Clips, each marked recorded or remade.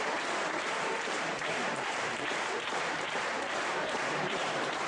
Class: remade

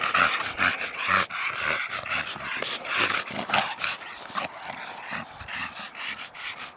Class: recorded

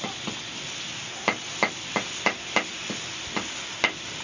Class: recorded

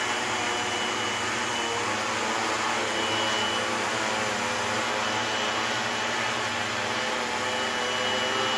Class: recorded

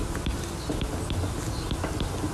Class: recorded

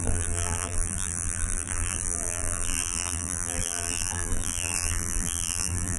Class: remade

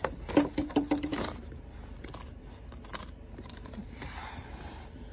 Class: remade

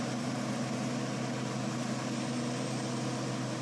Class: recorded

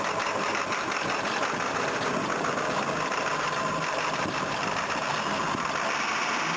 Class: recorded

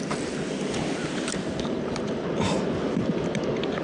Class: recorded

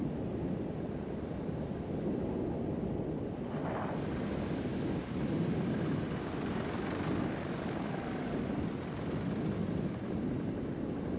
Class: recorded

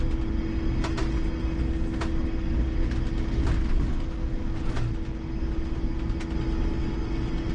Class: recorded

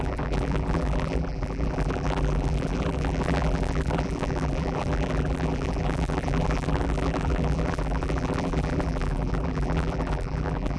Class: remade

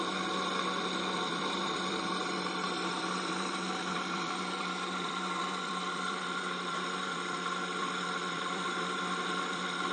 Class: remade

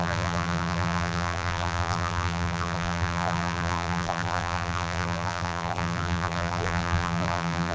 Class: remade